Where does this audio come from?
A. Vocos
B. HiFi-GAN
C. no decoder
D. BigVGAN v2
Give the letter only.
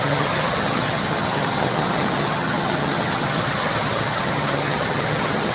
B